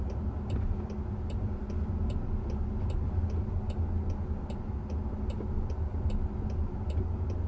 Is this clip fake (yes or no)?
no